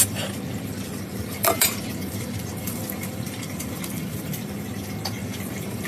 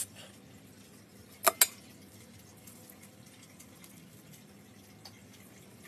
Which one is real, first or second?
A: second